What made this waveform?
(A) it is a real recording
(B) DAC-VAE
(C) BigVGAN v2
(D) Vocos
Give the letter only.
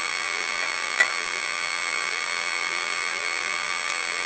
C